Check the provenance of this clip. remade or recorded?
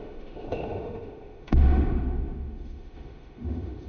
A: remade